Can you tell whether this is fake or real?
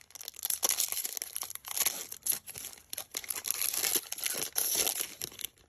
real